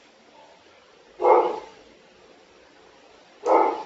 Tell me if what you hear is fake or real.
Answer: real